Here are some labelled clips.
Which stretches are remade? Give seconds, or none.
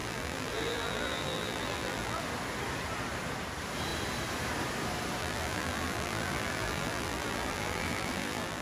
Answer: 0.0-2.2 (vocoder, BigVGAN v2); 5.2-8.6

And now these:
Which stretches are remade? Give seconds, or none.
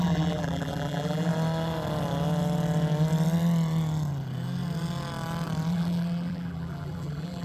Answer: 0.0-1.3 (vocoder, BigVGAN v2); 5.7-7.4